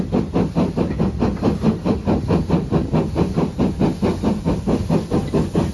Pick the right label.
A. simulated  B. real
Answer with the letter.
B